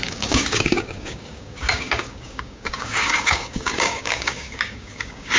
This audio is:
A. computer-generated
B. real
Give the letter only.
A